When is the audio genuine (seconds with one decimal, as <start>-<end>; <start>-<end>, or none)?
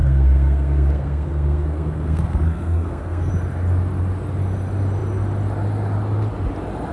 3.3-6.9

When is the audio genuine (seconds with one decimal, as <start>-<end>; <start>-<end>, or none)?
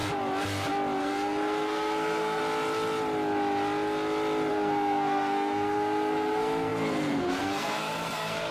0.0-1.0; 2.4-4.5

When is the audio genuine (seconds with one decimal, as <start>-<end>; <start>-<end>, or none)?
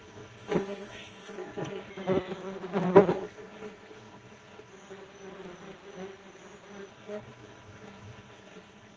1.9-3.1; 4.7-6.9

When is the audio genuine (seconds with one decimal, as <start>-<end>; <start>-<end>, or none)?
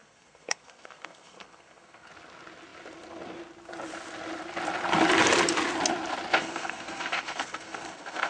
2.1-6.4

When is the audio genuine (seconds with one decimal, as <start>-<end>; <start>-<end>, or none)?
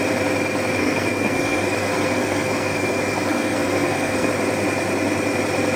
0.0-0.8; 4.3-5.8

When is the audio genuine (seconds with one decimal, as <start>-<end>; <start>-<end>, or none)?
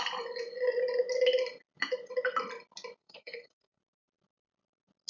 0.0-3.0; 3.8-5.1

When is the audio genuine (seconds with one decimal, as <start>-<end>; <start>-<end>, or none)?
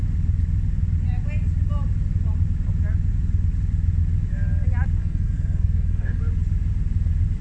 0.0-5.0; 6.2-7.4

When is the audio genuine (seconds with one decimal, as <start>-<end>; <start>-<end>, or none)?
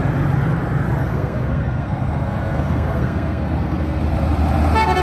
0.0-1.0; 4.0-5.0